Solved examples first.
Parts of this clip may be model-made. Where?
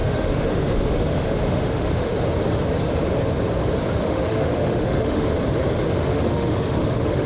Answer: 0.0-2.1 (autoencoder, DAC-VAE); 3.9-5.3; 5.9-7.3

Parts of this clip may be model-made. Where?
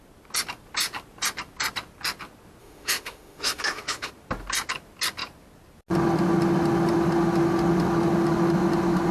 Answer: 2.6-4.1 (autoencoder, DAC-VAE)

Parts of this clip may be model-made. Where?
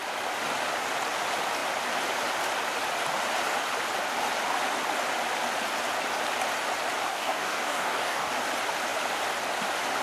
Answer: 7.1-8.3 (codec, DAC)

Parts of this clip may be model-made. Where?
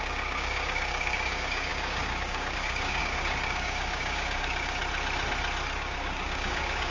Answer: 0.0-4.8 (codec, DAC); 5.8-6.9